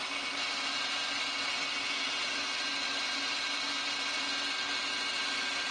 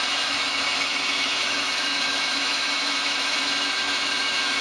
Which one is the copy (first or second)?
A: second